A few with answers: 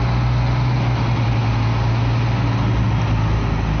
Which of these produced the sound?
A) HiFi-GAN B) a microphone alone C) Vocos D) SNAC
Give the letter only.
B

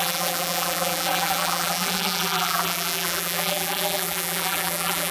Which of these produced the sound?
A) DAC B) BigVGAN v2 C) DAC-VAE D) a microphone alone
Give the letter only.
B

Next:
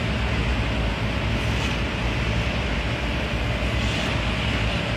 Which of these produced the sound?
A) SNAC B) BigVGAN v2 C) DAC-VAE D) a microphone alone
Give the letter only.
D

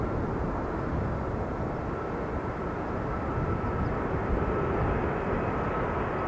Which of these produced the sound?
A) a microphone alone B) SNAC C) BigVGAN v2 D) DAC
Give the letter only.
A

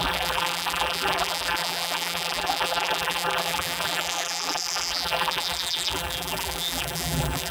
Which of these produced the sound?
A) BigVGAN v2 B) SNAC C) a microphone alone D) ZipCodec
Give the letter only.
A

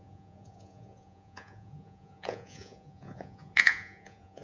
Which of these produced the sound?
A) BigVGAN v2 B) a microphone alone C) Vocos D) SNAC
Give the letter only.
C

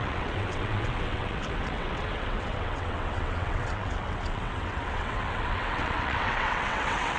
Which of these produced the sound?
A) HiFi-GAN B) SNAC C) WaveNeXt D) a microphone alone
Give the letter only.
C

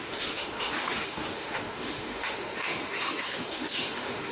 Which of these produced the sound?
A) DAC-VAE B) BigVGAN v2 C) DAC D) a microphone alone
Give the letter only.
A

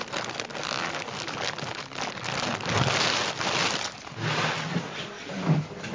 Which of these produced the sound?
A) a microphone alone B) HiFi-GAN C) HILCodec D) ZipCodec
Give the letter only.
A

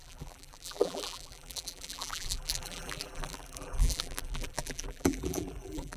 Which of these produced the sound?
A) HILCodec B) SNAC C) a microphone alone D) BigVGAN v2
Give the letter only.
D